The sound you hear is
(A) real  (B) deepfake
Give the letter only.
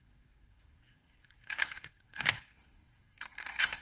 B